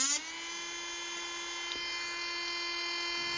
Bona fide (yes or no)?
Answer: yes